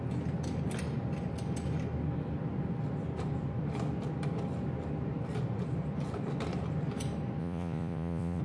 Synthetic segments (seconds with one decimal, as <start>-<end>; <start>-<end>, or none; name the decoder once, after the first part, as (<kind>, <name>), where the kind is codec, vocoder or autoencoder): 7.4-8.4 (vocoder, Vocos)